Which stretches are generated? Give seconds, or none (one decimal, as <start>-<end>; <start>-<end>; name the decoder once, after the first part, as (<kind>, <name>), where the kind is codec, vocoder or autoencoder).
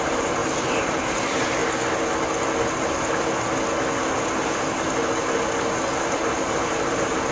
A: 0.0-1.6 (vocoder, BigVGAN v2); 6.0-7.3